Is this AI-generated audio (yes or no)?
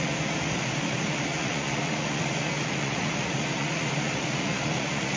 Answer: yes